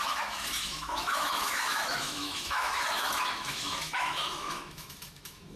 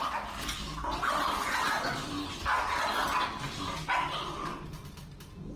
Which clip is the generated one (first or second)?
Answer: first